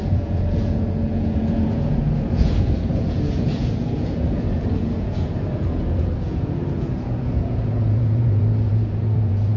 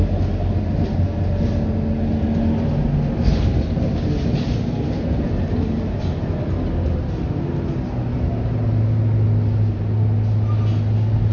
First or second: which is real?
second